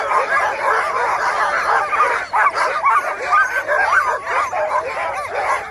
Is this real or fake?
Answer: real